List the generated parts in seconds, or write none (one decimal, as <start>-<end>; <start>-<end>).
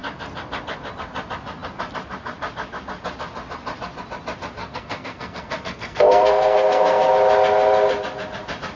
4.6-7.1